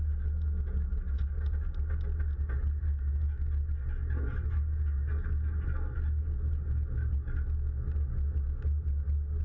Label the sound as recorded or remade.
recorded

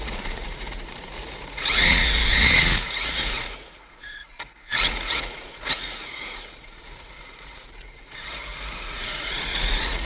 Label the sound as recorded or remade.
remade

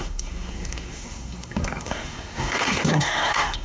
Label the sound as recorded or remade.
remade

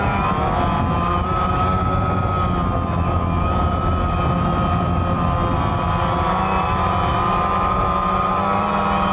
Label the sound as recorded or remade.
recorded